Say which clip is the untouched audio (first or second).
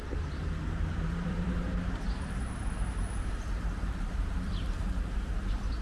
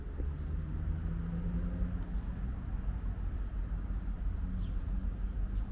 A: second